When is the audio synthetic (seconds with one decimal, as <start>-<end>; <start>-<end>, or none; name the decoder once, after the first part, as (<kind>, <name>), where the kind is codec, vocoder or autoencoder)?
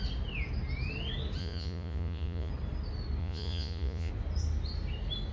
1.4-2.5 (vocoder, Vocos); 3.2-4.1